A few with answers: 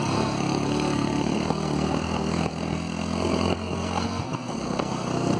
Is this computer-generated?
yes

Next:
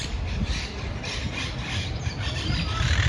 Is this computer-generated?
no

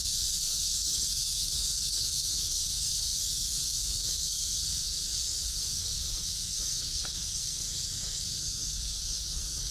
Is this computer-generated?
yes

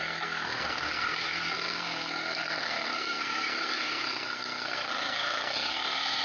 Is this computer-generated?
yes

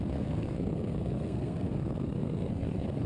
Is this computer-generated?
yes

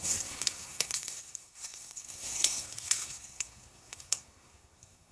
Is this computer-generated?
yes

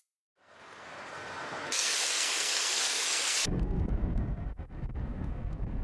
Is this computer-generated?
yes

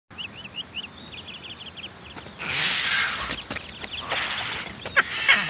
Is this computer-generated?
no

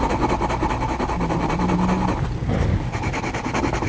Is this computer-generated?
no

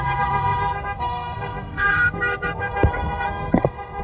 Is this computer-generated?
yes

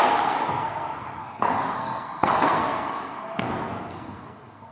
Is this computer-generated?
yes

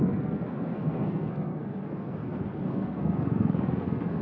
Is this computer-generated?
yes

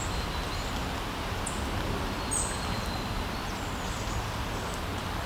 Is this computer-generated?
no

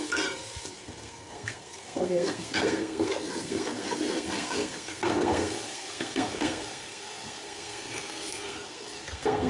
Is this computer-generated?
yes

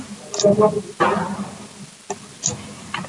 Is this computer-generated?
no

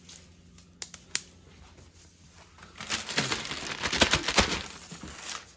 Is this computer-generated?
no